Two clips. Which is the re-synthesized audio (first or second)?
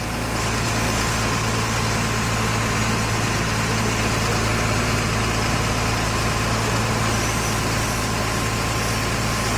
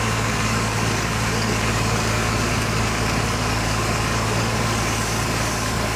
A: second